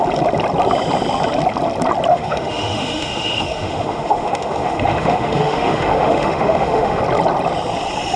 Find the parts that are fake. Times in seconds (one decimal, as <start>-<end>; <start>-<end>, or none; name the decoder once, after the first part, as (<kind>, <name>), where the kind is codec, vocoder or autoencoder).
2.1-7.0 (autoencoder, DAC-VAE)